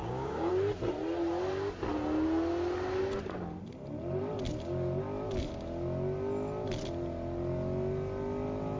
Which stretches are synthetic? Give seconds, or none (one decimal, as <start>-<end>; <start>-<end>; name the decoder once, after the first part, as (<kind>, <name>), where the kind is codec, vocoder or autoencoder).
0.0-0.5 (codec, DAC)